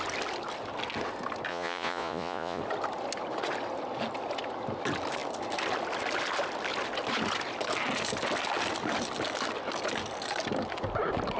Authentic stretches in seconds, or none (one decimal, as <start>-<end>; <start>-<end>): 0.0-1.5; 2.6-11.4